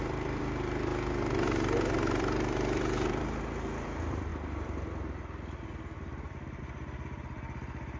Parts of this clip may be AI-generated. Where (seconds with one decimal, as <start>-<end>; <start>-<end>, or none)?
0.0-0.9; 2.2-4.3; 6.6-8.0